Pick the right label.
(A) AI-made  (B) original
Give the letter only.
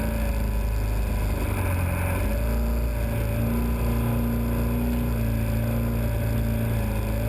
B